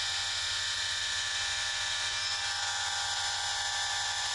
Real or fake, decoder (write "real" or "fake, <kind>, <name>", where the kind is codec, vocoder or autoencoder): fake, vocoder, Vocos